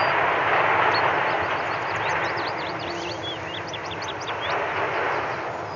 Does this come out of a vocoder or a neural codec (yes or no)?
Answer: no